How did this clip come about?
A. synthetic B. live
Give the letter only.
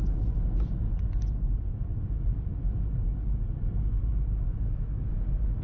B